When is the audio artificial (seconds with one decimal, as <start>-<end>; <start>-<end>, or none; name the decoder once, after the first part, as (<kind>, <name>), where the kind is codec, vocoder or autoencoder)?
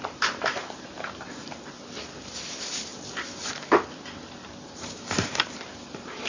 0.0-1.4 (vocoder, BigVGAN v2); 2.2-2.9; 3.4-6.3